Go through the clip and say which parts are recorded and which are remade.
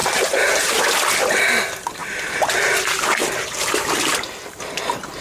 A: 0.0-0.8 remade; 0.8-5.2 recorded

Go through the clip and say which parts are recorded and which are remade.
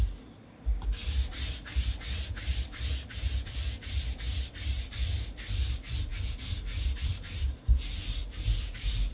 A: 0.0-9.1 recorded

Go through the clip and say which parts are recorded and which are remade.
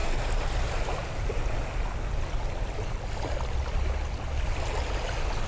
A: 0.0-5.5 recorded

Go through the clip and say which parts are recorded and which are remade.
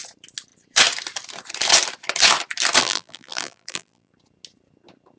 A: 0.0-2.8 recorded; 2.8-4.1 remade; 4.1-5.2 recorded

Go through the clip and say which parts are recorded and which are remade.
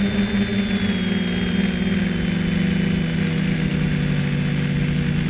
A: 0.0-5.3 recorded